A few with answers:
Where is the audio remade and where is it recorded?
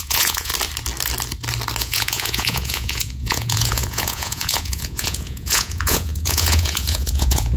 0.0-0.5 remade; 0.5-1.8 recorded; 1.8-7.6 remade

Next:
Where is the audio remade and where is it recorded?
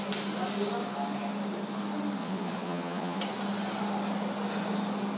0.0-2.2 recorded; 2.2-3.2 remade; 3.2-5.2 recorded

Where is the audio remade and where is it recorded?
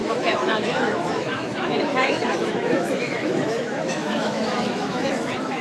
0.0-5.6 remade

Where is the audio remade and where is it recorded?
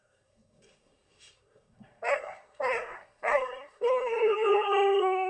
0.0-5.3 remade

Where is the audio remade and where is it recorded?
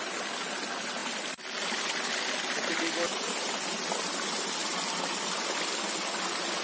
0.0-3.1 recorded; 3.1-3.6 remade; 3.6-6.6 recorded